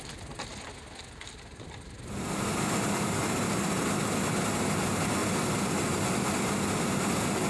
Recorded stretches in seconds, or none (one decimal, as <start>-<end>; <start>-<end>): 0.0-7.5